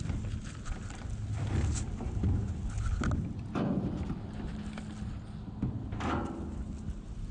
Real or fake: real